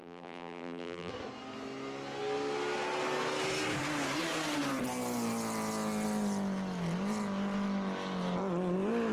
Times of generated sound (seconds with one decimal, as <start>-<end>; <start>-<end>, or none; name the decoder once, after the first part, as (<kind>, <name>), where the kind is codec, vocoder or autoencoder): 0.0-1.1 (vocoder, BigVGAN v2)

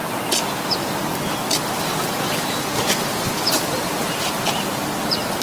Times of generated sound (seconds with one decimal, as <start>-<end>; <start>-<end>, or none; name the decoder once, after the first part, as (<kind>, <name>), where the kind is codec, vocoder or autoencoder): 2.7-3.5 (vocoder, BigVGAN v2)

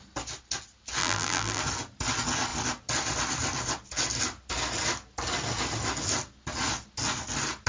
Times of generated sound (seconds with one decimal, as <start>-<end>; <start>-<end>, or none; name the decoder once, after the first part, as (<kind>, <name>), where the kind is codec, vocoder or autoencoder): 1.0-1.6 (vocoder, BigVGAN v2)

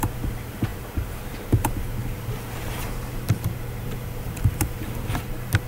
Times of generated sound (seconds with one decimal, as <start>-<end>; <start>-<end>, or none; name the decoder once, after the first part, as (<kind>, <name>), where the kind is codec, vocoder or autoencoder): 0.0-5.7 (vocoder, BigVGAN v2)

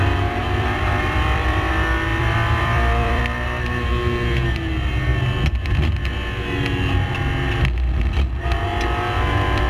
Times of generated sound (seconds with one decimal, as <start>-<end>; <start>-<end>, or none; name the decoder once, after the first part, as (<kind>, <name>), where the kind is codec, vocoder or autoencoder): 0.4-1.7 (vocoder, BigVGAN v2); 2.1-3.2

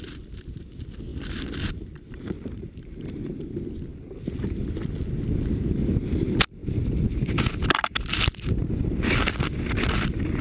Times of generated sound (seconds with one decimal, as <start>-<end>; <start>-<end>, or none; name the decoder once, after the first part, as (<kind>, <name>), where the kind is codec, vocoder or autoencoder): 1.1-3.4 (vocoder, BigVGAN v2)

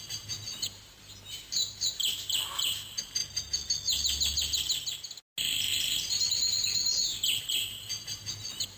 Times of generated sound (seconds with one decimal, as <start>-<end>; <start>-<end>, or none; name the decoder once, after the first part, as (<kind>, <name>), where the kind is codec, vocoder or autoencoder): 0.0-3.2 (vocoder, BigVGAN v2); 7.4-8.8